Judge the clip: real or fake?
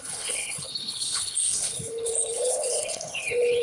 fake